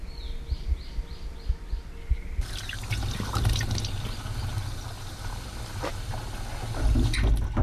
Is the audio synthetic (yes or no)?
no